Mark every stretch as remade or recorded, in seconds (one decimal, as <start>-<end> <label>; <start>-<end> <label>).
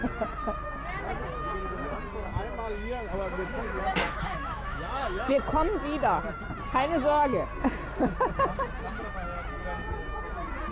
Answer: 0.0-2.7 recorded; 2.7-5.4 remade; 5.4-10.7 recorded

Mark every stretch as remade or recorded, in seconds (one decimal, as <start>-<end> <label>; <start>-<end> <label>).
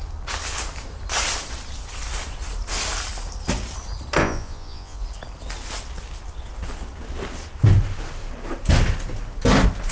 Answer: 0.0-4.2 recorded; 4.2-5.0 remade; 5.0-9.9 recorded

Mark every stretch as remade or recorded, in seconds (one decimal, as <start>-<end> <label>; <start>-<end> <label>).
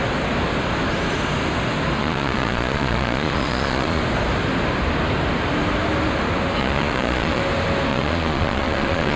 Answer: 0.0-2.0 recorded; 2.0-4.0 remade; 4.0-6.6 recorded; 6.6-7.4 remade; 7.4-7.9 recorded; 7.9-9.2 remade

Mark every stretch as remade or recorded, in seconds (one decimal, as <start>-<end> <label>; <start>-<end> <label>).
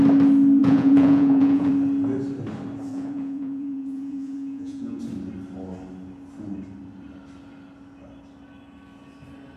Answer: 0.0-0.6 recorded; 0.6-1.7 remade; 1.7-2.9 recorded; 2.9-5.0 remade; 5.0-9.6 recorded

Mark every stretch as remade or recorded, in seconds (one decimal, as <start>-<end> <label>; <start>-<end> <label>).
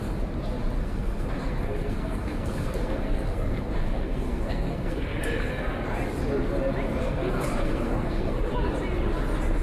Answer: 0.0-0.8 recorded; 0.8-5.2 remade; 5.2-7.0 recorded; 7.0-8.5 remade; 8.5-9.6 recorded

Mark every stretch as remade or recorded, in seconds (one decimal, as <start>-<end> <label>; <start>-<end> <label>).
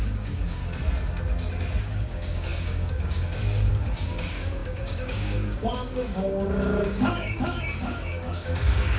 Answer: 0.0-0.6 remade; 0.6-1.8 recorded; 1.8-9.0 remade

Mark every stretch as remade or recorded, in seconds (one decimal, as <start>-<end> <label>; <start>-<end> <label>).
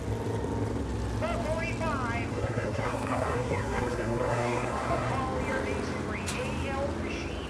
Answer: 0.0-2.3 recorded; 2.3-5.1 remade; 5.1-7.5 recorded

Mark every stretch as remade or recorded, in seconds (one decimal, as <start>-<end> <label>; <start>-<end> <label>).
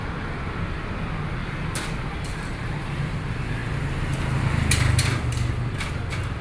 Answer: 0.0-1.4 recorded; 1.4-3.2 remade; 3.2-6.4 recorded